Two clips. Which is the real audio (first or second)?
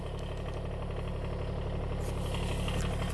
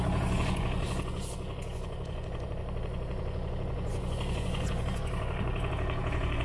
first